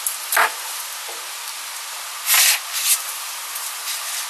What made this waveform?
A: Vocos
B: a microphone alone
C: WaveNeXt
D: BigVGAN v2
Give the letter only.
B